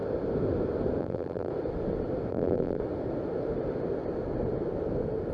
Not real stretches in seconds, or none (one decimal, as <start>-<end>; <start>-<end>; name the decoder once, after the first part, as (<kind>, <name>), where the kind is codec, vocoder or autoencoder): 1.0-1.5 (vocoder, BigVGAN v2); 2.3-2.8